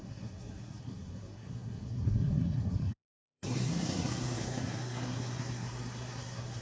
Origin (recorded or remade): remade